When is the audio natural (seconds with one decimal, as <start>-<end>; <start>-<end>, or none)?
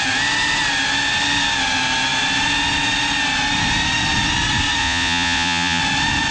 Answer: 0.0-4.8; 5.8-6.3